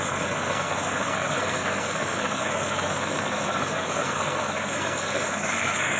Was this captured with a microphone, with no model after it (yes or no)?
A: no